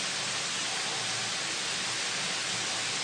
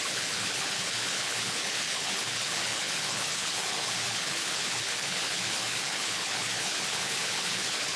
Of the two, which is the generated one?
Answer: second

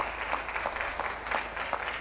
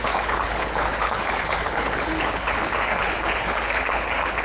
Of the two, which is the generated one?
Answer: second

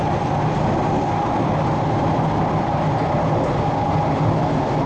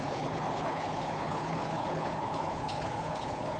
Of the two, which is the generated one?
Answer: second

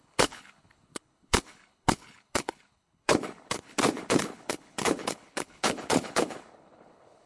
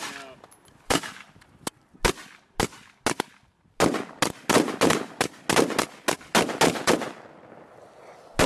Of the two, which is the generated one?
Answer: first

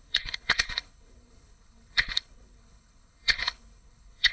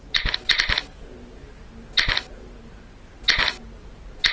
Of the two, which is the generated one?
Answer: first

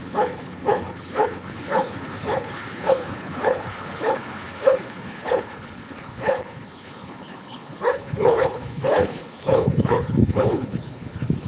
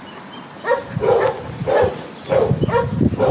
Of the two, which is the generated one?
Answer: first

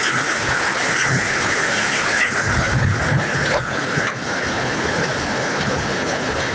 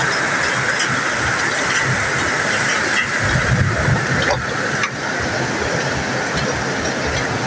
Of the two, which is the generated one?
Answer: first